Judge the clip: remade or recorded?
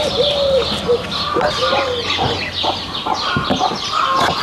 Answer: recorded